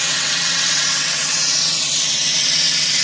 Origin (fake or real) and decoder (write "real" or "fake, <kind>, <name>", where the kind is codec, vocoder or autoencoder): fake, vocoder, WaveNeXt